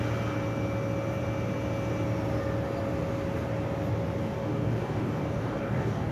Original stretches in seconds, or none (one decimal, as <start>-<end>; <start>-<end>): 0.0-4.2